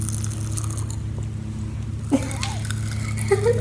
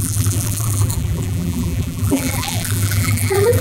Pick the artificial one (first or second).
second